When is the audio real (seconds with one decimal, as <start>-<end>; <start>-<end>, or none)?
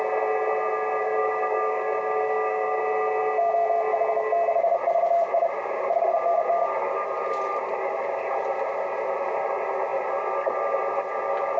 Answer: 0.0-1.0; 2.8-11.6